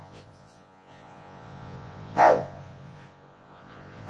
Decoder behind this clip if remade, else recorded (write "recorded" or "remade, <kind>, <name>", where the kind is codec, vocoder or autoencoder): remade, vocoder, Vocos